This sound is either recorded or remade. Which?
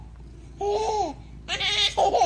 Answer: recorded